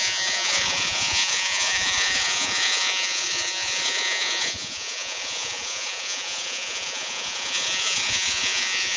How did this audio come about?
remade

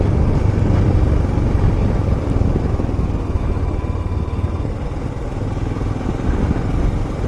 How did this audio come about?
recorded